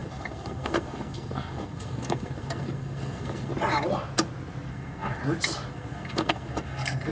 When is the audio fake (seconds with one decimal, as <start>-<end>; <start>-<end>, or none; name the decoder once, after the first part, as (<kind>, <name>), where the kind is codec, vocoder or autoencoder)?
0.0-3.5 (codec, SNAC); 4.7-5.2; 5.7-7.1